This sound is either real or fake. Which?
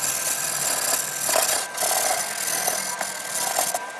real